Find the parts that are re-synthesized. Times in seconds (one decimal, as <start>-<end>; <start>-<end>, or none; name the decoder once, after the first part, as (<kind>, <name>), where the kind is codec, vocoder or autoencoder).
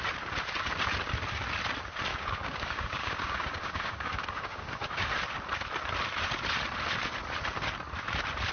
2.1-5.1 (codec, DAC)